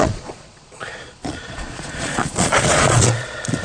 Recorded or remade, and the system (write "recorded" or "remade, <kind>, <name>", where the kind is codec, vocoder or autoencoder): remade, vocoder, Vocos